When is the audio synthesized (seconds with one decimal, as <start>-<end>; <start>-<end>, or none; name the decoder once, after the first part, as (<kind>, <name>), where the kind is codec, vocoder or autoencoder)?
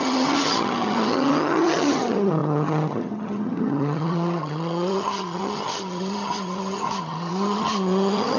0.0-8.4 (vocoder, HiFi-GAN)